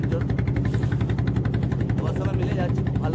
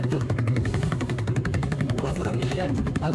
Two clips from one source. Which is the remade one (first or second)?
second